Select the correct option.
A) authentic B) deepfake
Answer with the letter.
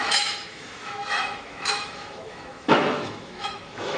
B